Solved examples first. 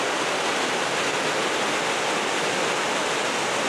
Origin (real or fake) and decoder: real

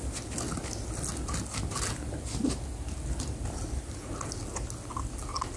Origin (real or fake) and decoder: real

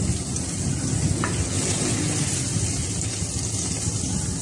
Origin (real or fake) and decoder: real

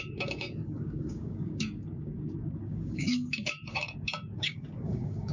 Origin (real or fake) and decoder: fake, codec, DAC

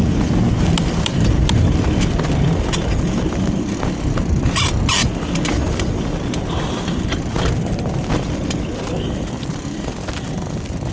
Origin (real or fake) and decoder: real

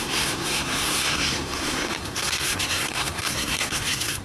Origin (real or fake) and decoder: fake, codec, SNAC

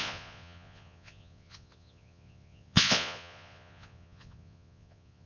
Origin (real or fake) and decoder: fake, vocoder, Vocos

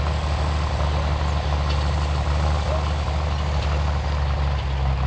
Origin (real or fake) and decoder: real